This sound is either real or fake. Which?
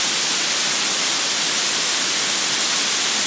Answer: real